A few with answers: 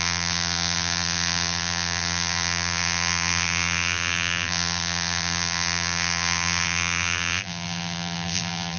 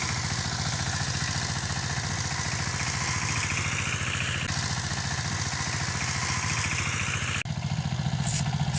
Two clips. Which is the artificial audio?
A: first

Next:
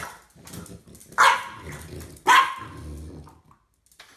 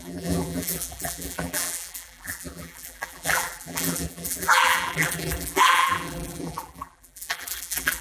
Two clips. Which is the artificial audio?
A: second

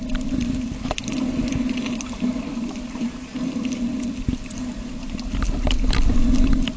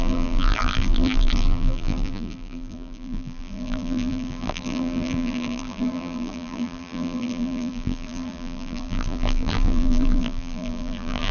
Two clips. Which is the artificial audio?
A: second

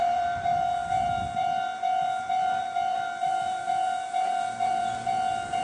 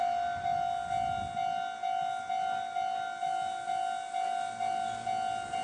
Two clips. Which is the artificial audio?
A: first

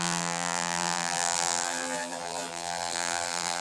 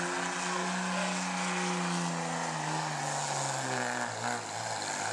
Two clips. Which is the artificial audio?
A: first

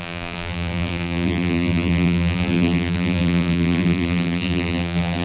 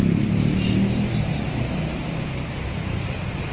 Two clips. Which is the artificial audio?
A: first